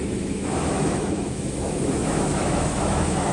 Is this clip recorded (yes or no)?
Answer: no